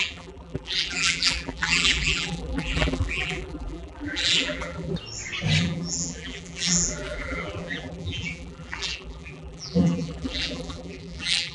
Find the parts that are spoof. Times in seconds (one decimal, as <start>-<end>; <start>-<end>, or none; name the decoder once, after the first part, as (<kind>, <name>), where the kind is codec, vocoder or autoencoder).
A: 0.0-4.9 (vocoder, BigVGAN v2); 5.6-11.5